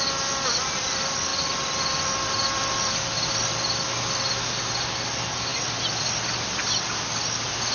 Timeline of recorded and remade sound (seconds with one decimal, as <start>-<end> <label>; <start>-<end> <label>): 0.0-7.7 recorded

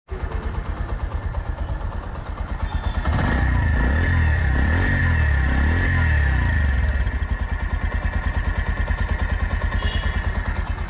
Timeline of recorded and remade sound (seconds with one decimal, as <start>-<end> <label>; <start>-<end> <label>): 0.0-2.7 recorded; 2.7-5.0 remade; 5.0-10.9 recorded

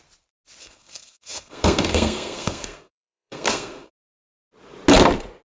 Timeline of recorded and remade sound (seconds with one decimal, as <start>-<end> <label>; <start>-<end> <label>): 0.0-0.6 recorded; 0.6-3.9 remade; 3.9-5.5 recorded